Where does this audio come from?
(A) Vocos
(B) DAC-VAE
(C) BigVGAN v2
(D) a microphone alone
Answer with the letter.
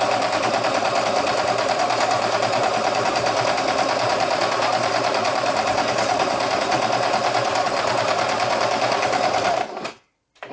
C